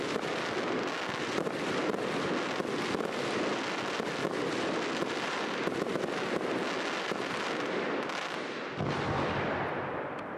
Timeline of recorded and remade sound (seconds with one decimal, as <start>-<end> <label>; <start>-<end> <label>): 0.0-10.4 recorded